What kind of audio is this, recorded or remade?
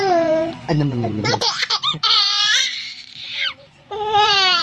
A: remade